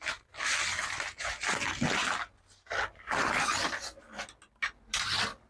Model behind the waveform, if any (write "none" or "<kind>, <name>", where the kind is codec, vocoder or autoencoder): none